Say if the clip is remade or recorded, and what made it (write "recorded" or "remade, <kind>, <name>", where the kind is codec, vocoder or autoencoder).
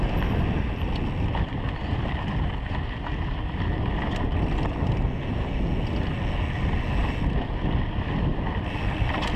recorded